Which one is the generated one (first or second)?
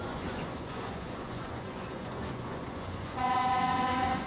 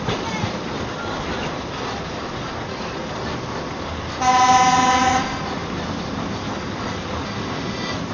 first